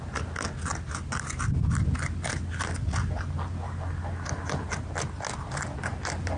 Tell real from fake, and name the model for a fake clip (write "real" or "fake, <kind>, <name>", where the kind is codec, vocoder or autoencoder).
real